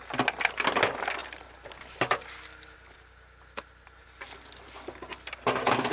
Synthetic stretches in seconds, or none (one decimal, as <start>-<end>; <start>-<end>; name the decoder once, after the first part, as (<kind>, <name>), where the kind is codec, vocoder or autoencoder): none